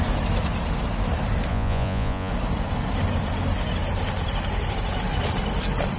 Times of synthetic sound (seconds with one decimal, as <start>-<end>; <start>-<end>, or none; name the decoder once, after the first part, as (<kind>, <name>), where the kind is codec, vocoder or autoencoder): 1.5-2.3 (vocoder, Vocos)